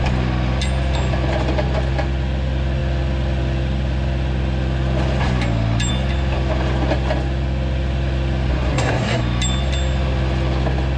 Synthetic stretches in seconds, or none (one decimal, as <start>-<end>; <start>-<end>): 8.5-9.2